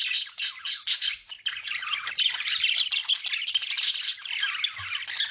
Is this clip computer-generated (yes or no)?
no